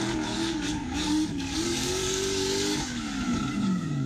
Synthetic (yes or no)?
yes